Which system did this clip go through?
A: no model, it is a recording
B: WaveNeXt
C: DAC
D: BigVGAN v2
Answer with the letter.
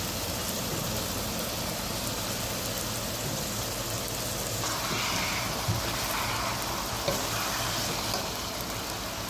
A